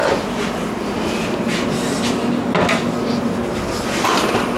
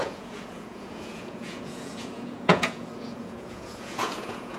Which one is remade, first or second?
second